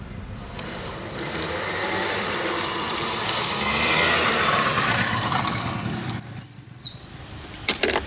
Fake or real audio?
fake